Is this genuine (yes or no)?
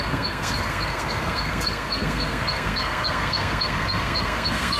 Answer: no